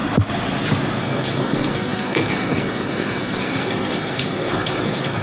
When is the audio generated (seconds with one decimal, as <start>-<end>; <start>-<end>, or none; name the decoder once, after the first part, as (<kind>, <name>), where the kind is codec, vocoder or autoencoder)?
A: 1.0-5.2 (codec, SNAC)